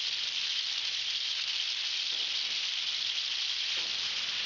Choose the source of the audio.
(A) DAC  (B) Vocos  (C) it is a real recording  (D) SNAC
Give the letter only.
C